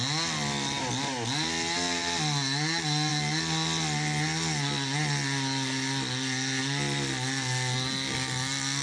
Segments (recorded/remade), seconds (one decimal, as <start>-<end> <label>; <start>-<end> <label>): 0.0-8.8 recorded